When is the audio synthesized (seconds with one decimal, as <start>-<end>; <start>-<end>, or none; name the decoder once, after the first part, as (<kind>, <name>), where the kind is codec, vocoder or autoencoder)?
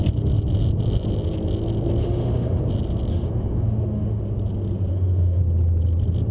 2.0-2.6 (autoencoder, DAC-VAE); 3.1-4.2; 4.9-5.4